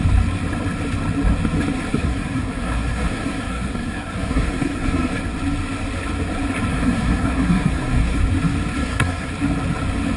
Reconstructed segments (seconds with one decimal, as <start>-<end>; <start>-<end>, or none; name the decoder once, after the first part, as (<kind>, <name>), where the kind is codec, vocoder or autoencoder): 1.9-5.2 (codec, SNAC); 6.7-8.2; 8.8-9.3